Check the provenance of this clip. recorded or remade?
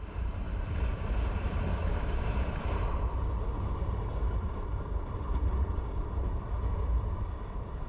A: remade